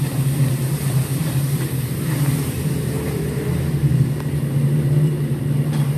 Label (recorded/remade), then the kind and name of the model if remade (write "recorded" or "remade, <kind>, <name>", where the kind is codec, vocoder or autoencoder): remade, vocoder, BigVGAN v2